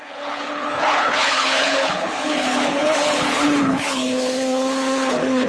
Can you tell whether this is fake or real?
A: fake